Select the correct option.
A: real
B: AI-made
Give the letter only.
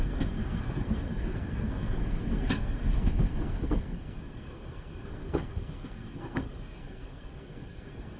B